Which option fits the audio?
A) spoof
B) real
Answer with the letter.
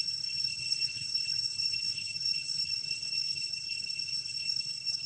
A